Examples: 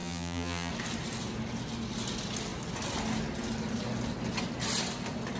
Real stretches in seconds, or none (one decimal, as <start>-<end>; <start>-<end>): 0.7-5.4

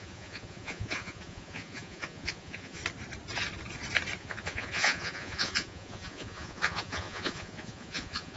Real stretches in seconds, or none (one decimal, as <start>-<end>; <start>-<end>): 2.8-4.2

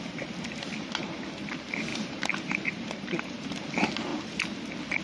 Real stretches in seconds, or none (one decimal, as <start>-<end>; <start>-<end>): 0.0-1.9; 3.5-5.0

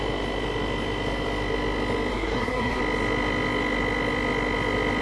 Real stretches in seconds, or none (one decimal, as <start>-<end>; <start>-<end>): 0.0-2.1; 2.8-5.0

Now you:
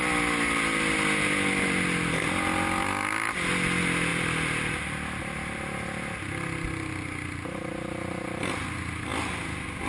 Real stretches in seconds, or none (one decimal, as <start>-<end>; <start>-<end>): 0.0-4.1; 4.7-9.9